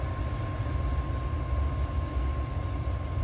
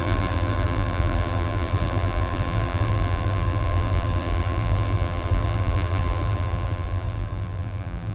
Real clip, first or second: first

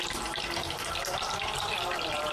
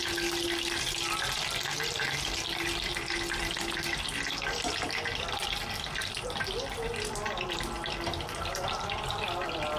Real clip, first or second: second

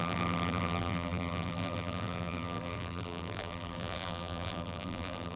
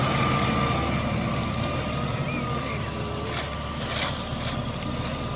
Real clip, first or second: second